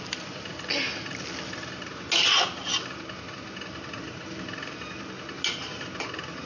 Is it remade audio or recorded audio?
recorded